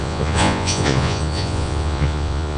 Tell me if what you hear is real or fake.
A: fake